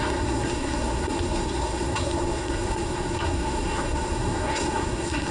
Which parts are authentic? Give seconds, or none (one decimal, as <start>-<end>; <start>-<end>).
none